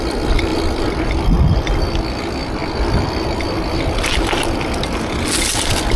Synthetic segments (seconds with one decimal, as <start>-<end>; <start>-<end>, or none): none